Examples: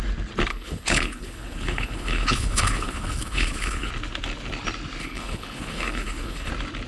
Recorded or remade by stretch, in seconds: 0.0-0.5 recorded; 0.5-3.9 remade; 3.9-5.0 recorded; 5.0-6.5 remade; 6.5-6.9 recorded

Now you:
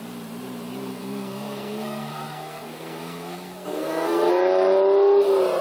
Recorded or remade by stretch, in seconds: 0.0-0.9 recorded; 0.9-4.3 remade; 4.3-5.6 recorded